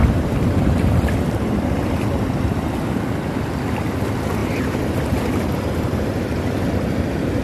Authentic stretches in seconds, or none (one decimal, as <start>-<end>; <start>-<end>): 1.7-7.4